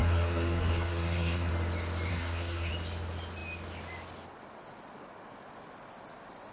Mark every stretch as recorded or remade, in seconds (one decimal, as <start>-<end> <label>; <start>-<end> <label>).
0.0-1.5 remade; 1.5-2.1 recorded; 2.1-2.7 remade; 2.7-6.5 recorded